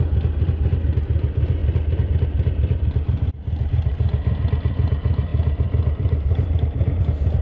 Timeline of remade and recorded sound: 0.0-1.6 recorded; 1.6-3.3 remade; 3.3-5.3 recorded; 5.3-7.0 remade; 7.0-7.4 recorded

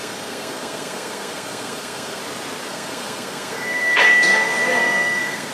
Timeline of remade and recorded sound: 0.0-2.2 remade; 2.2-2.7 recorded; 2.7-5.5 remade

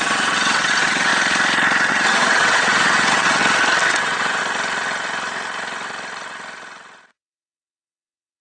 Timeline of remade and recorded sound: 0.0-1.1 remade; 1.1-1.9 recorded; 1.9-3.4 remade; 3.4-3.9 recorded; 3.9-4.4 remade; 4.4-7.1 recorded; 7.1-8.4 remade

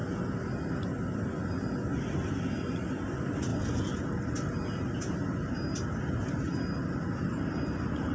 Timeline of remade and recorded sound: 0.0-8.1 recorded

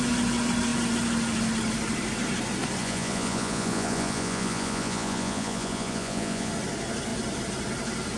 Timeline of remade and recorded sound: 0.0-2.8 recorded; 2.8-6.5 remade; 6.5-8.2 recorded